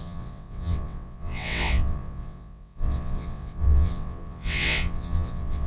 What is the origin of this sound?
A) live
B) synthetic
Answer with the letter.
B